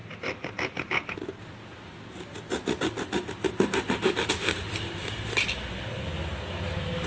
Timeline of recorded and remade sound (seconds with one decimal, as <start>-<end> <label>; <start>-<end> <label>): 0.0-7.1 recorded